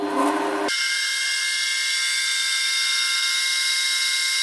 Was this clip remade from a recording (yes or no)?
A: no